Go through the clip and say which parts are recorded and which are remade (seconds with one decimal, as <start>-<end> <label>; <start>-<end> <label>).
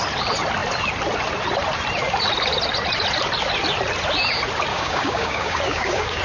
0.0-4.7 recorded; 4.7-6.2 remade